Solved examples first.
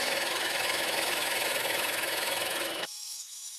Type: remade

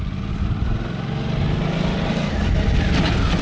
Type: recorded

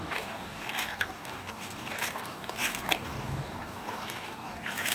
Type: remade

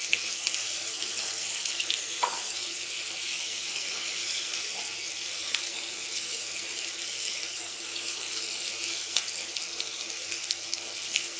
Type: remade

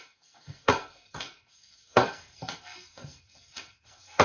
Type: remade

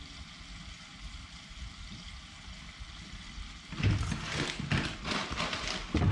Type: recorded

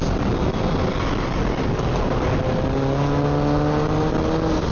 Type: recorded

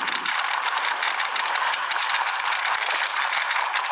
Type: remade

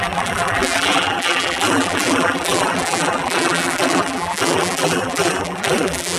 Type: remade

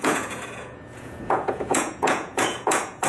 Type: remade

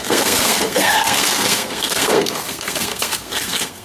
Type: remade